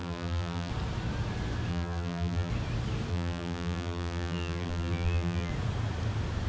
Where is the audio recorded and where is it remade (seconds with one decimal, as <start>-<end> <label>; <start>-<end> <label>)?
0.0-0.7 remade; 0.7-1.7 recorded; 1.7-2.5 remade; 2.5-3.1 recorded; 3.1-5.5 remade; 5.5-6.5 recorded